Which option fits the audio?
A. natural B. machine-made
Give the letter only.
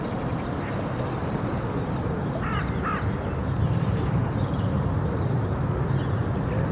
A